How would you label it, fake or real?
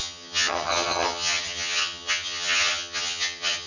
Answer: fake